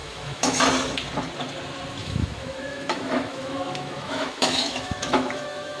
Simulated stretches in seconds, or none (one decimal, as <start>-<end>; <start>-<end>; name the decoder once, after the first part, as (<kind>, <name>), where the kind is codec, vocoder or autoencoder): 0.0-0.6 (autoencoder, DAC-VAE); 2.0-5.8